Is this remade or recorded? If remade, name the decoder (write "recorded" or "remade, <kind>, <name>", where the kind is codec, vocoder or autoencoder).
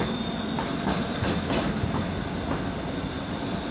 recorded